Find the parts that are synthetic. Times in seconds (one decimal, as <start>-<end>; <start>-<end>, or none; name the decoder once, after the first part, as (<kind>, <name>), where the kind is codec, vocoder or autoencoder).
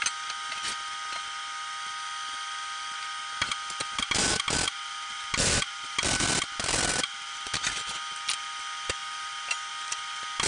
none